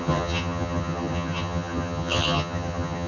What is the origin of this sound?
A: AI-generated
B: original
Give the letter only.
A